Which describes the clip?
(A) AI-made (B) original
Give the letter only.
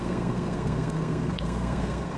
A